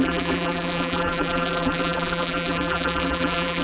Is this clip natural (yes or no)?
no